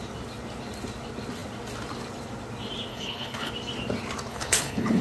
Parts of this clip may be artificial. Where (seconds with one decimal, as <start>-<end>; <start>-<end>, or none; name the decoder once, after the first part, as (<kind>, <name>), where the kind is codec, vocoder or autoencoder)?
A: 2.9-3.5 (codec, HILCodec); 4.3-5.0